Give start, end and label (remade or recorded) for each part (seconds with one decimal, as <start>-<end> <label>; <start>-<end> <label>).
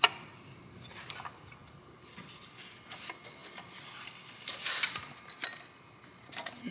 0.0-6.7 recorded